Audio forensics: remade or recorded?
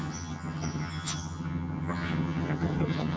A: remade